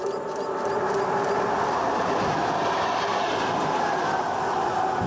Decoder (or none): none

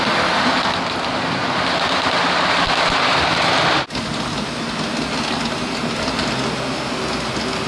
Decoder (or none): none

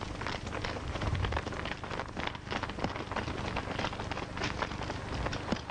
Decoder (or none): none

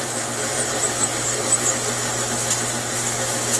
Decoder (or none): none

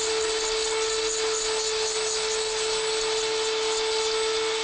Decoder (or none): none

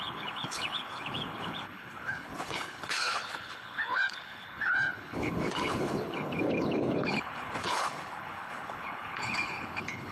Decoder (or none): codec, HILCodec